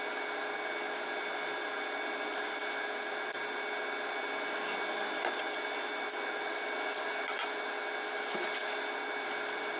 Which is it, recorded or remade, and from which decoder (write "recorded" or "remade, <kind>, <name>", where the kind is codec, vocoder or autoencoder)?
recorded